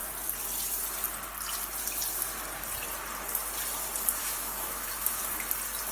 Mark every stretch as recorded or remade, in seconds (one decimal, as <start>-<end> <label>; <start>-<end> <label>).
0.0-4.2 recorded; 4.2-5.2 remade; 5.2-5.9 recorded